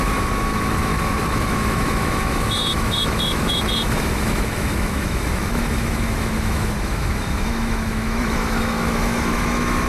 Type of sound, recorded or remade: remade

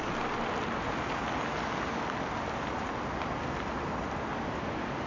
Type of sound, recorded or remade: recorded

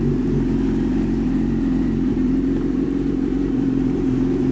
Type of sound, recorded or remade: remade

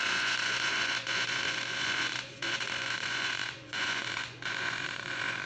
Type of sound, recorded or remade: remade